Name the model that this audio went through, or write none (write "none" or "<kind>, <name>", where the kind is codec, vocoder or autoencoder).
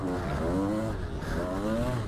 none